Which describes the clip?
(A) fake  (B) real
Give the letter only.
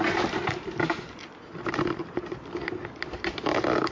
B